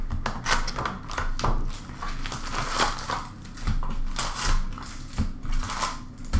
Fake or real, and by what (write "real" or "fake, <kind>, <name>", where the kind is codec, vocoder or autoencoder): real